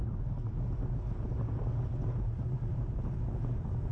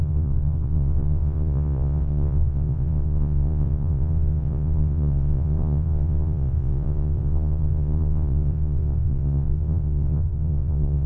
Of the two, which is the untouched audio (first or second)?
first